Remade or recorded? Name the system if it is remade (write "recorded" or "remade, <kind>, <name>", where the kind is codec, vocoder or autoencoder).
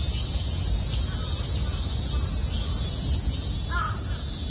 recorded